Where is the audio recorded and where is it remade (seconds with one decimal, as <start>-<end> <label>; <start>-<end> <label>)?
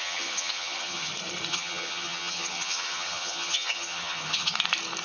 0.0-1.1 remade; 1.1-1.5 recorded; 1.5-4.5 remade; 4.5-5.0 recorded